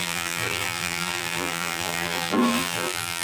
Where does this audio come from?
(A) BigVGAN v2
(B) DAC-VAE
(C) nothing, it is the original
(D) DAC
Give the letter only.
A